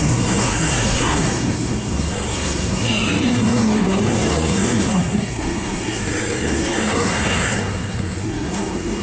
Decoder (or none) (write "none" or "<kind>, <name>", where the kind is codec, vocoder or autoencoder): codec, SNAC